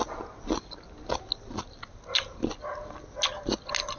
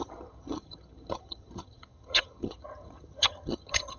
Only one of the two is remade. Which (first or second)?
second